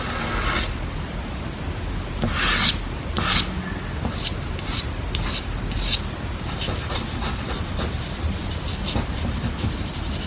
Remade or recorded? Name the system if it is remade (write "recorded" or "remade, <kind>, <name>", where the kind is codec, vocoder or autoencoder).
recorded